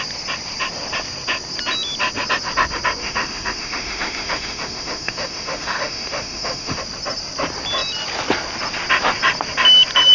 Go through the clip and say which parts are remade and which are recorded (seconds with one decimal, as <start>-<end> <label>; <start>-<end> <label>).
0.0-3.0 recorded; 3.0-6.8 remade; 6.8-10.1 recorded